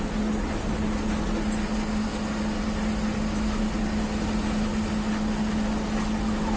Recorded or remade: recorded